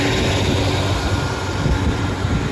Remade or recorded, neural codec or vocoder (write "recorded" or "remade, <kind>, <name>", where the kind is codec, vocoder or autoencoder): recorded